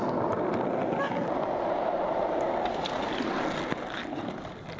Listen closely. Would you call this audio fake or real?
real